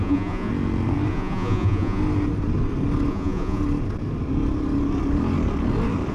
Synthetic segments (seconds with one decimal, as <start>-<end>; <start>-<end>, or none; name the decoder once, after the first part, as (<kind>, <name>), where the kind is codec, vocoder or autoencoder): 0.0-0.5 (vocoder, Vocos); 1.1-2.0; 3.1-3.6